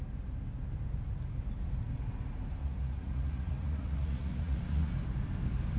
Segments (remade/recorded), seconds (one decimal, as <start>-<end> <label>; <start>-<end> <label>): 0.0-2.6 recorded; 2.6-4.9 remade; 4.9-5.8 recorded